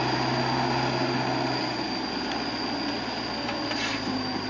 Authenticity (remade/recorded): recorded